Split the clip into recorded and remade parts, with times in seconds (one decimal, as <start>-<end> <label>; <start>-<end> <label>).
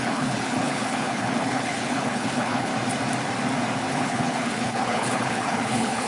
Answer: 0.0-2.7 remade; 2.7-3.9 recorded; 3.9-6.1 remade